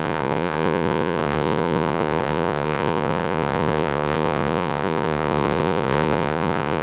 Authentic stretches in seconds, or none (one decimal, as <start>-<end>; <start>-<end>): none

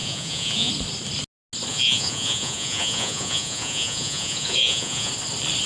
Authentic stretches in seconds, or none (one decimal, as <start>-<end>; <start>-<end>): 0.7-1.7; 5.1-5.7

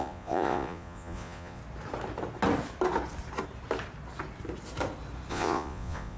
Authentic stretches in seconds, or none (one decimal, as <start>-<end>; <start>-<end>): 1.6-5.3

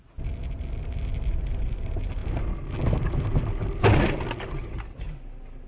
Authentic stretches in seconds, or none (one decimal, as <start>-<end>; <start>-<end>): 0.0-5.7

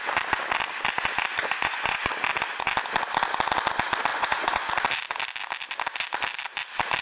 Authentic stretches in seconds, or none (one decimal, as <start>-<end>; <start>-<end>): 0.0-1.4; 2.1-4.1; 4.7-7.0

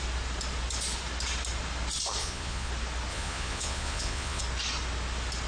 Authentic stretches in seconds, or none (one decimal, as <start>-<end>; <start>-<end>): 0.0-2.2; 2.7-3.1; 4.4-5.5

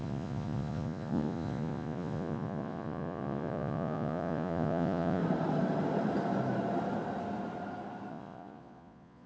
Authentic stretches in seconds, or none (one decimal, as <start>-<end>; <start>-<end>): 5.2-8.1